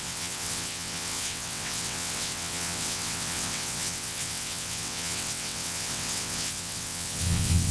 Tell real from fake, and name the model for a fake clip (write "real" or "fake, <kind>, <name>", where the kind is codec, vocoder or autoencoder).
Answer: fake, vocoder, WaveNeXt